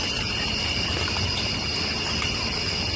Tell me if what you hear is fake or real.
real